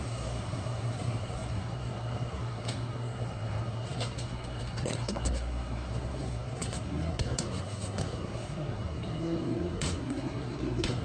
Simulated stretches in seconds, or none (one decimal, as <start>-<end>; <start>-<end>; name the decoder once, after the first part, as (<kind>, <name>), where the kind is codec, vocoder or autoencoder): 0.0-11.0 (codec, SNAC)

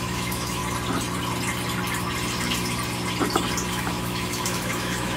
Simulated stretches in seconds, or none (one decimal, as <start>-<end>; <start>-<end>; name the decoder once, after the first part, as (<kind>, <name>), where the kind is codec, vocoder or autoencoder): 0.0-0.6 (autoencoder, DAC-VAE); 3.7-5.2

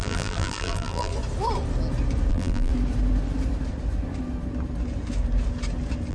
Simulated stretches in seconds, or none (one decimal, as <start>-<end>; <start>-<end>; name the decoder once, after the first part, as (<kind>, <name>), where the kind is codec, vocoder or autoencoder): 0.0-1.1 (vocoder, BigVGAN v2); 2.3-2.7